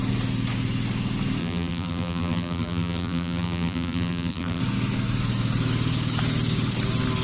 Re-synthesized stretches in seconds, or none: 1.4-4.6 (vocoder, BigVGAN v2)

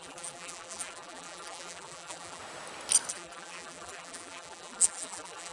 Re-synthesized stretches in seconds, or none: 0.0-2.4 (vocoder, BigVGAN v2); 3.1-5.5